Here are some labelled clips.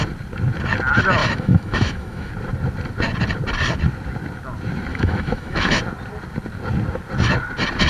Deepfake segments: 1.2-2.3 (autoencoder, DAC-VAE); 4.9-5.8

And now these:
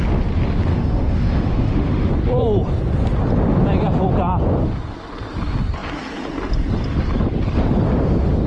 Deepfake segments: 0.7-2.1 (autoencoder, DAC-VAE)

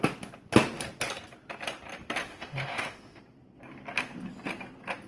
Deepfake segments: 2.3-3.2 (autoencoder, DAC-VAE)

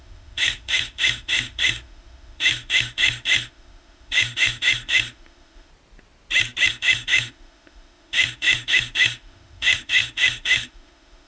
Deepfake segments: 0.0-5.7 (autoencoder, DAC-VAE); 6.7-11.3

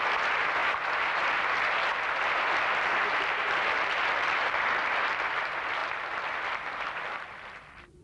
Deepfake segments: none

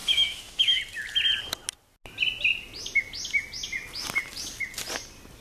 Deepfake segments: 0.0-0.8 (autoencoder, DAC-VAE)

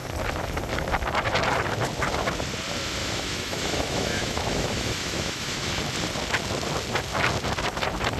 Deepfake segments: 3.0-5.7 (autoencoder, DAC-VAE)